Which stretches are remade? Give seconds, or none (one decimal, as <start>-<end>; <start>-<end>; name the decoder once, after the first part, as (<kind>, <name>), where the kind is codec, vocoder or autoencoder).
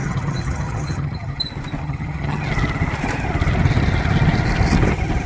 0.0-1.4 (vocoder, HiFi-GAN); 1.8-2.5